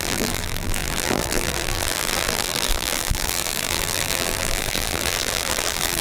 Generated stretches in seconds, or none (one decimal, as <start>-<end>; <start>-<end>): 0.0-6.0